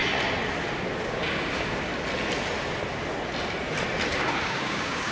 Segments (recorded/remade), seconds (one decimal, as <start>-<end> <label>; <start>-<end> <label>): 0.0-1.0 recorded; 1.0-1.9 remade; 1.9-4.1 recorded; 4.1-5.1 remade